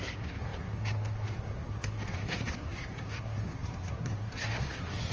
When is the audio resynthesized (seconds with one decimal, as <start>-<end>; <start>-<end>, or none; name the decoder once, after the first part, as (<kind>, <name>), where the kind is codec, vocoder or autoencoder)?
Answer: 0.0-5.1 (codec, SNAC)